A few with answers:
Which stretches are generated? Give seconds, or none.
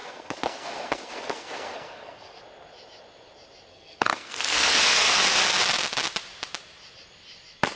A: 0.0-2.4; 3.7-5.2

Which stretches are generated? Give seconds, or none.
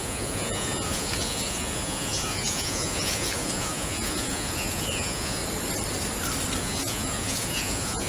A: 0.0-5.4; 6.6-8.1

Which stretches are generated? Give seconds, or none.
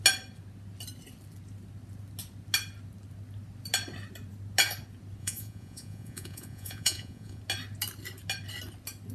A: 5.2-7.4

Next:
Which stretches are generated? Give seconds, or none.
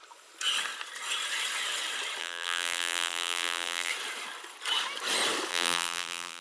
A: 2.2-3.9; 5.5-6.4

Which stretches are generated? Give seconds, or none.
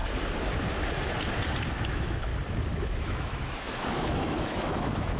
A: 1.7-2.3; 2.8-5.2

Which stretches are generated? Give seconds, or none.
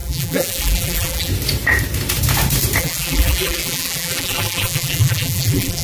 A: 0.0-1.3; 2.8-5.8